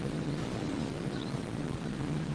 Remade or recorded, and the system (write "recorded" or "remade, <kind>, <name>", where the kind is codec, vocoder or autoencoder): remade, vocoder, Vocos